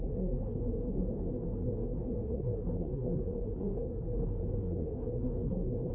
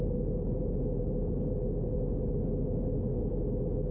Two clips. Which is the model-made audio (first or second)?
first